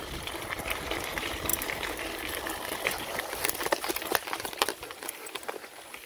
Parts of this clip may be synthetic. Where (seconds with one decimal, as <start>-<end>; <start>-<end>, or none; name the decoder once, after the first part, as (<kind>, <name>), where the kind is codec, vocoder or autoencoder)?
0.0-6.1 (vocoder, BigVGAN v2)